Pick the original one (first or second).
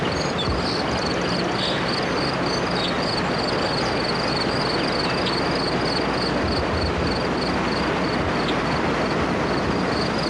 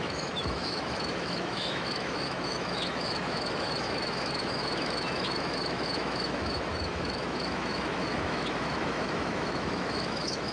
first